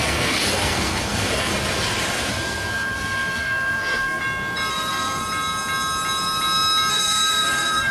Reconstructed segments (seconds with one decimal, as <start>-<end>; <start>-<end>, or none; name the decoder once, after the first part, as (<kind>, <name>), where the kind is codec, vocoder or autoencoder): 0.0-1.5 (codec, SNAC); 2.3-4.2; 4.7-5.2; 6.9-7.9